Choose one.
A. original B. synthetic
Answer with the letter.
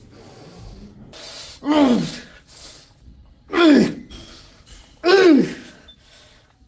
A